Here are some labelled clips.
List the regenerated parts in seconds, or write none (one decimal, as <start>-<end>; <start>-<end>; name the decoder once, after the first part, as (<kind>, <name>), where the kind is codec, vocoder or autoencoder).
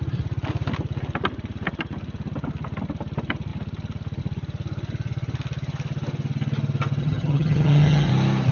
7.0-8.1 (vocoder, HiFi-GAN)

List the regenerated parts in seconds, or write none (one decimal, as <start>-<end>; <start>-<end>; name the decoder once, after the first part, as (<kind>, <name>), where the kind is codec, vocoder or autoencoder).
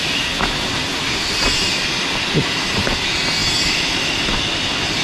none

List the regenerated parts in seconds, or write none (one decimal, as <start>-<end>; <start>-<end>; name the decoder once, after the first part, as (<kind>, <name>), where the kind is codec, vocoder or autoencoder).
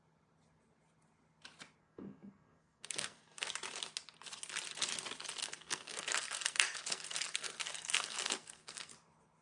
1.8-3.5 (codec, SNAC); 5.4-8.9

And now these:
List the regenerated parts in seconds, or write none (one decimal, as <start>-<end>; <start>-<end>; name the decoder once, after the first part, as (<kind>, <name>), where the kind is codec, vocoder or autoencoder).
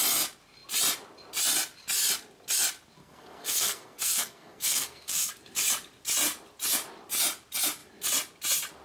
3.0-5.3 (codec, SNAC)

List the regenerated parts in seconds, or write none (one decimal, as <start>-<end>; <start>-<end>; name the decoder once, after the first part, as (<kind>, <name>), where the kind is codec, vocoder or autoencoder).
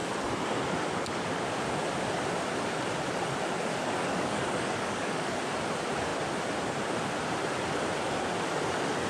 3.7-5.4 (codec, DAC)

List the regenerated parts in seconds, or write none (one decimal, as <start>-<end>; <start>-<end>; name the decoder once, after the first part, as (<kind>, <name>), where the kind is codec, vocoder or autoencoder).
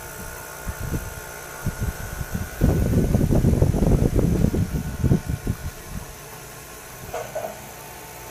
1.6-3.2 (vocoder, BigVGAN v2); 5.6-7.1